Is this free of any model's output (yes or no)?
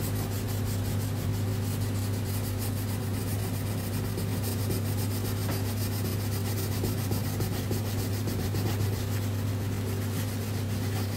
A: yes